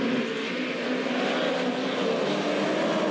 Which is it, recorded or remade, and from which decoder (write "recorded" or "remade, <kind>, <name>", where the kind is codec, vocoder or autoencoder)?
recorded